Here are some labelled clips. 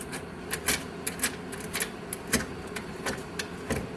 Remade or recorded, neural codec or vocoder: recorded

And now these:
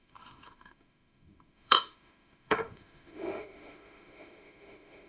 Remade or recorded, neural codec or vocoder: remade, autoencoder, DAC-VAE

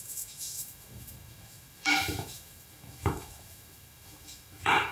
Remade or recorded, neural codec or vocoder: remade, autoencoder, DAC-VAE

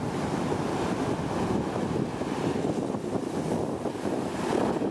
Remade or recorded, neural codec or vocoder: remade, vocoder, BigVGAN v2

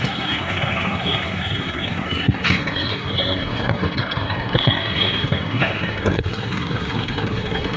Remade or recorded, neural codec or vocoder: remade, codec, SNAC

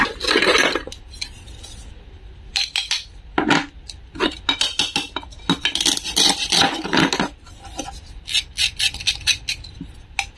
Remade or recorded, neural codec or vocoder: recorded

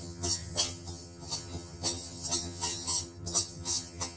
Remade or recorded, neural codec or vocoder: remade, vocoder, HiFi-GAN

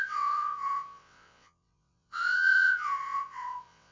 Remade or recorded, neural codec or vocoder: remade, vocoder, WaveNeXt